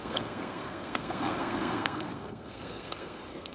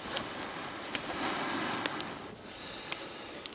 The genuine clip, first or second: second